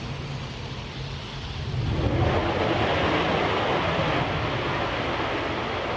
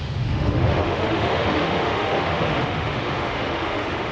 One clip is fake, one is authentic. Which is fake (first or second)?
second